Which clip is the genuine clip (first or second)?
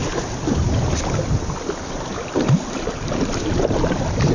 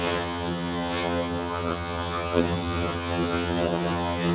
first